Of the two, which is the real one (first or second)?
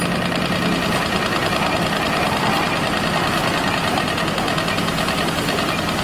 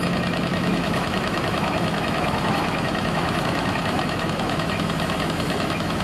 first